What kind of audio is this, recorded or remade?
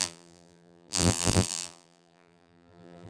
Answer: remade